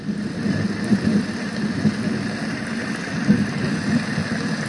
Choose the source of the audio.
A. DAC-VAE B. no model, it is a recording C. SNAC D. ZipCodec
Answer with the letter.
B